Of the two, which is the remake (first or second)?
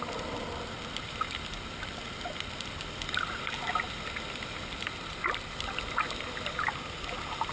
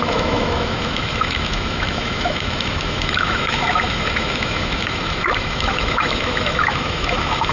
second